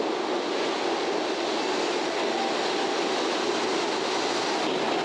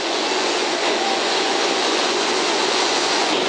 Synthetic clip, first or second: second